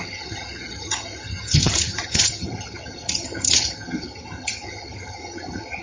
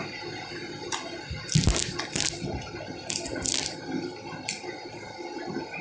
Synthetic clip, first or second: first